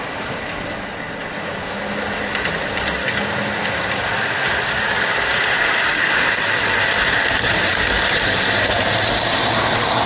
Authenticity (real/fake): real